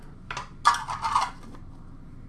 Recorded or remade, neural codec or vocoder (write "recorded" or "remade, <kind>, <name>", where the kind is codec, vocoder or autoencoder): recorded